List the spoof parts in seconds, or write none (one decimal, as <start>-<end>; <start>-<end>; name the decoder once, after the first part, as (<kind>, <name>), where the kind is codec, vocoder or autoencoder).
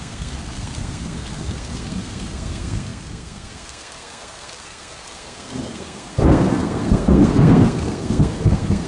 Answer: 0.0-8.9 (codec, SNAC)